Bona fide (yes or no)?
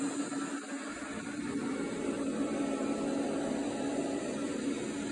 yes